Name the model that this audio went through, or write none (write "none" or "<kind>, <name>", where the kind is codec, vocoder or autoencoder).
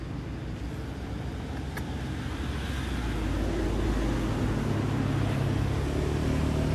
none